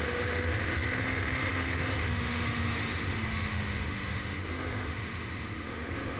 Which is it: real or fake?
fake